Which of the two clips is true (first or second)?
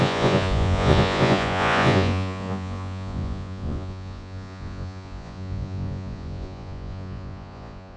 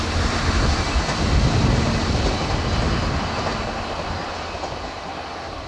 second